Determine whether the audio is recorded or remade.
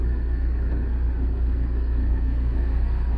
remade